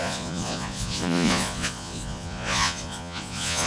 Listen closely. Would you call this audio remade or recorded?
remade